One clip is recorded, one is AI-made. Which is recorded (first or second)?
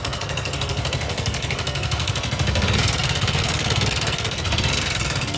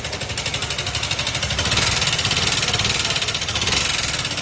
second